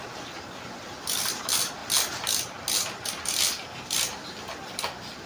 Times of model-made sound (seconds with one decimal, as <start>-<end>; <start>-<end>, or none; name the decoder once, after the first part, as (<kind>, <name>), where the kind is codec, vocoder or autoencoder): none

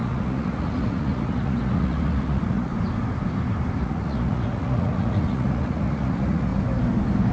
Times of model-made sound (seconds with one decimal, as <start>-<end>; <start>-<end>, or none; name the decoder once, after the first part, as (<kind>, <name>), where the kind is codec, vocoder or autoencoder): 0.0-2.7 (vocoder, Vocos); 3.8-6.5

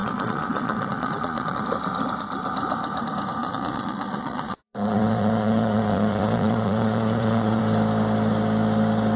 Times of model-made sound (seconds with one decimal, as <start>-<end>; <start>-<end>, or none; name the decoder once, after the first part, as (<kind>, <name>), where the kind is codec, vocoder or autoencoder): 0.0-1.6 (vocoder, Vocos); 3.4-7.6

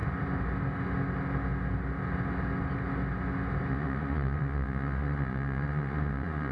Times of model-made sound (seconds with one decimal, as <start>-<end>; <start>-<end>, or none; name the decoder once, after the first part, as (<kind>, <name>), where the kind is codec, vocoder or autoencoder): 3.7-6.5 (vocoder, Vocos)

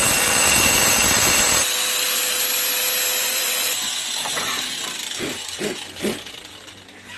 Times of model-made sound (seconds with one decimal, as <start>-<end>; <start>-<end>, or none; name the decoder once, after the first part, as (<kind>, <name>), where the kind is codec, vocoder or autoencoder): 3.2-4.6 (vocoder, Vocos)

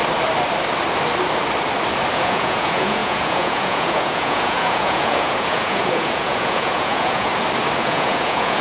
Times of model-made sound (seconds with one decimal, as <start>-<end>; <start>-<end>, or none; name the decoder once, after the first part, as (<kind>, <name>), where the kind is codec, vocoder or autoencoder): 2.1-7.3 (vocoder, Vocos); 7.8-8.6

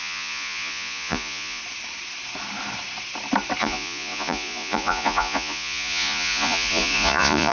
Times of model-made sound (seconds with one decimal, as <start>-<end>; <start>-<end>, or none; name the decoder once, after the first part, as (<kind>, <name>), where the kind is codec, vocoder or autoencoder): 0.0-1.6 (vocoder, Vocos); 3.6-7.5